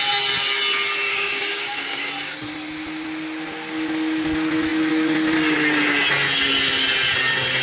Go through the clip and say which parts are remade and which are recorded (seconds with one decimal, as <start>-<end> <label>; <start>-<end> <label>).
0.0-1.1 recorded; 1.1-2.1 remade; 2.1-7.6 recorded